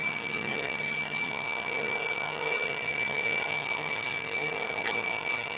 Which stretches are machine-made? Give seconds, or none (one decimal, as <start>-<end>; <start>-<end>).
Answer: 0.0-5.6